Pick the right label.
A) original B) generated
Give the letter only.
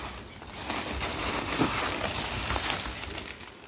A